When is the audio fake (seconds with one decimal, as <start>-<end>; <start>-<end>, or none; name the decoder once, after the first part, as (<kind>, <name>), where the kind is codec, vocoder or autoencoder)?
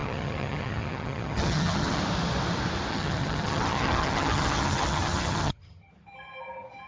0.0-2.0 (vocoder, HiFi-GAN); 2.9-5.9